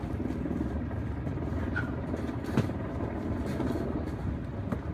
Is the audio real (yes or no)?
yes